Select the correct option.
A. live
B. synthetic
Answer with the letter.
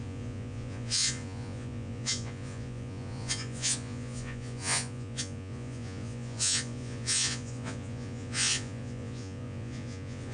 B